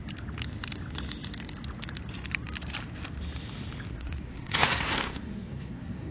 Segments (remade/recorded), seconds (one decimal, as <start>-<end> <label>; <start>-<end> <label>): 0.0-3.9 recorded; 3.9-6.1 remade